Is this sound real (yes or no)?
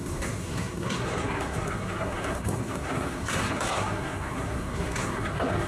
no